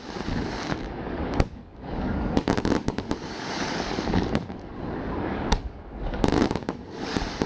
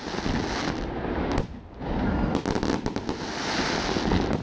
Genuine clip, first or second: second